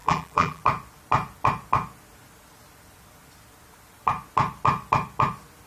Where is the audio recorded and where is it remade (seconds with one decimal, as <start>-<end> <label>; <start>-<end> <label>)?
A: 0.0-0.6 remade; 0.6-5.7 recorded